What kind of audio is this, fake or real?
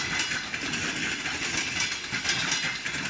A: real